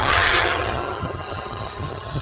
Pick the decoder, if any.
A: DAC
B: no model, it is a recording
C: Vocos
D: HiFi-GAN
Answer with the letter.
D